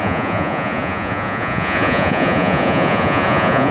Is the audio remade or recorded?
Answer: remade